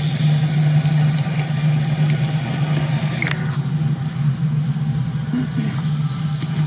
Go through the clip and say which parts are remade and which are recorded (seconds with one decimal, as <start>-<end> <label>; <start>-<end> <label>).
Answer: 0.0-6.7 recorded